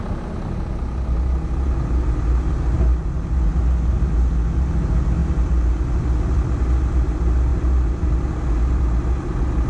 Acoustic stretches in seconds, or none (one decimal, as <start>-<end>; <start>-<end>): 0.0-5.2; 6.9-9.7

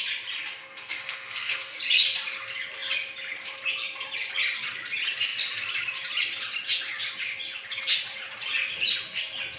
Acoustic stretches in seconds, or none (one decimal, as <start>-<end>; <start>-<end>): 0.0-0.6; 1.8-9.6

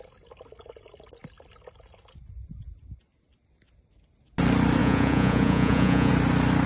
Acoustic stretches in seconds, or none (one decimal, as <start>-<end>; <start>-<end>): 0.0-4.8; 6.1-6.7

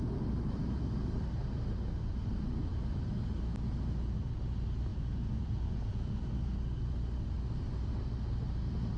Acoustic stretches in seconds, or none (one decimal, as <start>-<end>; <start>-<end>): 0.0-4.9; 6.3-9.0

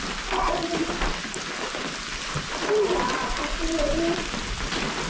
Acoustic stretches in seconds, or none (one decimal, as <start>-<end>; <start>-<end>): 0.0-5.1

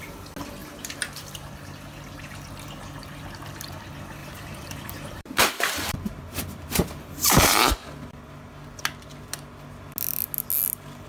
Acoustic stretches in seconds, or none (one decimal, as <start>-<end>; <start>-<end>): 0.0-0.6; 1.3-4.2; 6.2-11.1

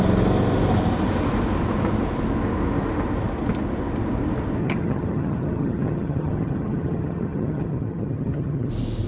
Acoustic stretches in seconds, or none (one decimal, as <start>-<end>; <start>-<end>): 0.0-4.6; 8.7-9.1